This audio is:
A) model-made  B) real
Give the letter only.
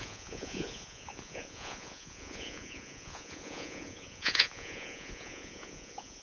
A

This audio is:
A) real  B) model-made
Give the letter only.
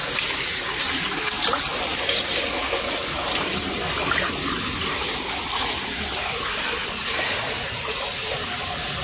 A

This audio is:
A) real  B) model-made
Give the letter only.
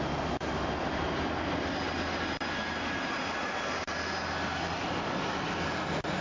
A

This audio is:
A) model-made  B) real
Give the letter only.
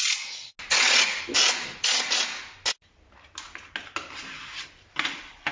B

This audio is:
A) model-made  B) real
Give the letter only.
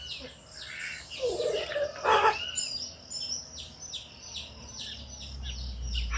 B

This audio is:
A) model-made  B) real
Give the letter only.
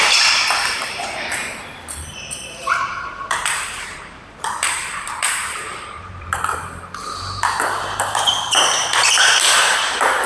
A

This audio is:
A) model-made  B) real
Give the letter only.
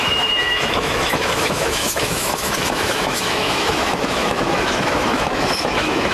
A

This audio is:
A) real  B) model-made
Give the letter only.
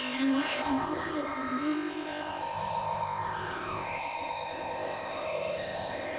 B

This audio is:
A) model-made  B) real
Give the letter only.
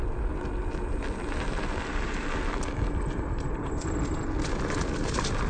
B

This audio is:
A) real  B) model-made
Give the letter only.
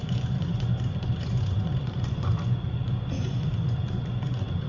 B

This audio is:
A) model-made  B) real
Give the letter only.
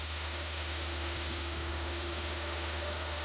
A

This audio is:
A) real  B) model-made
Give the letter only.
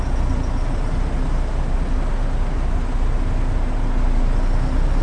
A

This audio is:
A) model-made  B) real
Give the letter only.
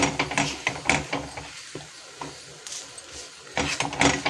B